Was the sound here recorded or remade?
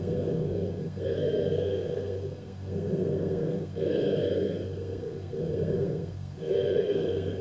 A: remade